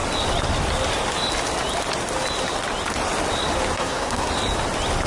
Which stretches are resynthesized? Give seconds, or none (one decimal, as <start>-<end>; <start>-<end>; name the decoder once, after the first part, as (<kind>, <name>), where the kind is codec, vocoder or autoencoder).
3.8-4.3 (codec, SNAC)